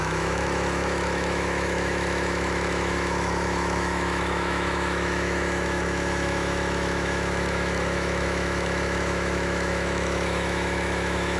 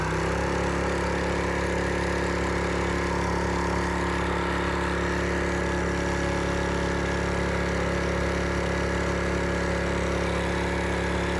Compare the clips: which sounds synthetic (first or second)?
first